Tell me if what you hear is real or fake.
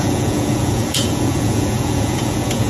fake